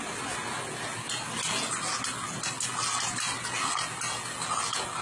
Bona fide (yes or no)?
yes